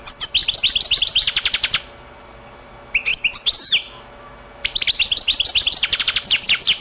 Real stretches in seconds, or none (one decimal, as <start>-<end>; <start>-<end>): 0.0-6.8